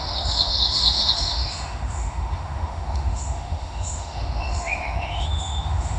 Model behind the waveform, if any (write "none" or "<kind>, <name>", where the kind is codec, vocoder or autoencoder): autoencoder, DAC-VAE